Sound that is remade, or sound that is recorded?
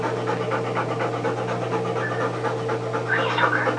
recorded